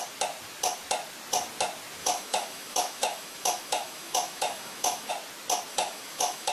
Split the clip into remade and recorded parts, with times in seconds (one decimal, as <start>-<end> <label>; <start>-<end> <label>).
0.0-2.0 recorded; 2.0-5.1 remade; 5.1-5.7 recorded; 5.7-6.5 remade